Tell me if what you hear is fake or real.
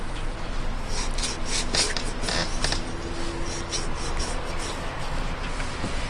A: real